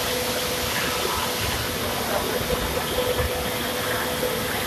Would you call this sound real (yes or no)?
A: yes